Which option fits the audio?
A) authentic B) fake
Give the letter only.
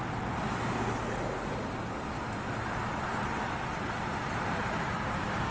A